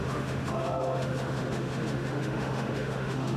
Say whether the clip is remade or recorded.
remade